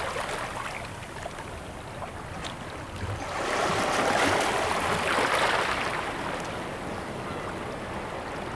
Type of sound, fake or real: real